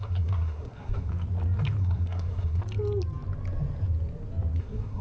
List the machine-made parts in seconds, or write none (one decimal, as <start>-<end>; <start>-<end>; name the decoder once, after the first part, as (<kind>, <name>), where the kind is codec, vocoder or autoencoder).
0.0-1.1 (codec, SNAC); 1.8-2.6; 4.6-5.0